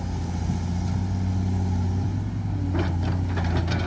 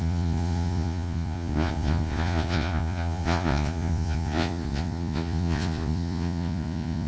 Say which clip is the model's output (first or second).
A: second